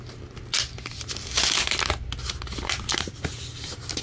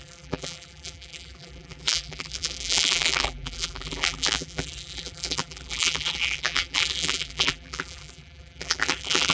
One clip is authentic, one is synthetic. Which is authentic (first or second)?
first